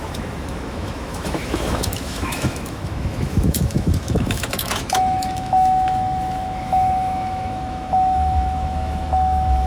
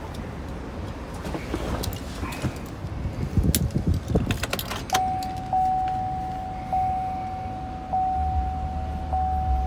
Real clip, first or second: second